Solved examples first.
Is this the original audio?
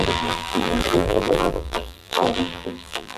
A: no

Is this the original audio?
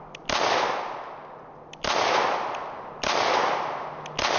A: yes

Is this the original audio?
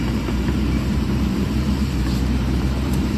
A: no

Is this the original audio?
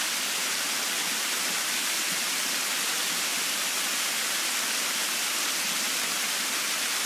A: yes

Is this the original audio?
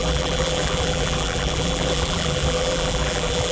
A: no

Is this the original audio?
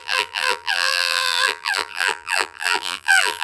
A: no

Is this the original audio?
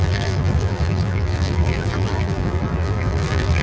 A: no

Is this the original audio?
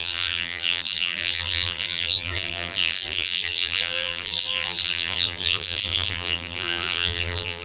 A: no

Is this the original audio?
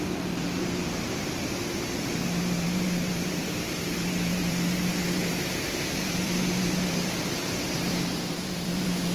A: no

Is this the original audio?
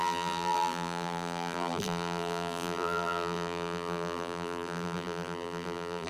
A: no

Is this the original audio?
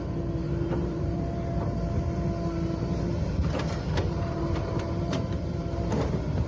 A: no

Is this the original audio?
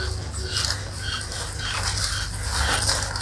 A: yes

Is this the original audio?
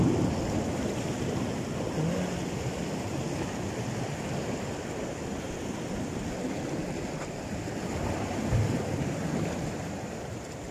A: yes